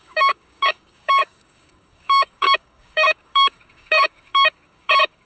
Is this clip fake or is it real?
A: fake